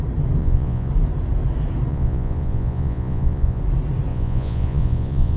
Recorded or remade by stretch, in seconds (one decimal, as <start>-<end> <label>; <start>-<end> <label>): 0.0-0.4 recorded; 0.4-0.9 remade; 0.9-1.9 recorded; 1.9-3.6 remade; 3.6-4.1 recorded; 4.1-5.4 remade